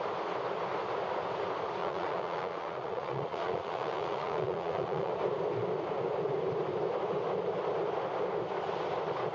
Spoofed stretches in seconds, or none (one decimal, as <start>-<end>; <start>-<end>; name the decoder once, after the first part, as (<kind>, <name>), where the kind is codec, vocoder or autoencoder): 1.8-5.1 (vocoder, Vocos)